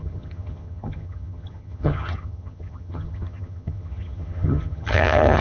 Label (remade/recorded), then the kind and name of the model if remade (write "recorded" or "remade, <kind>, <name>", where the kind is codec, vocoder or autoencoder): remade, vocoder, HiFi-GAN